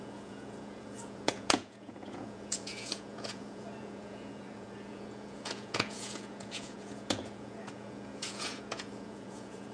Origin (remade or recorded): remade